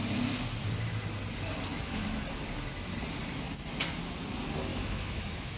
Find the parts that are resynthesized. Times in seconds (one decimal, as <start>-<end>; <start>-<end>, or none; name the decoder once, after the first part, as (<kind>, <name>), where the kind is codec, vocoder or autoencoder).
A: 1.7-2.3 (autoencoder, DAC-VAE); 4.7-5.6